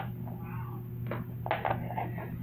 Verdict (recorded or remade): recorded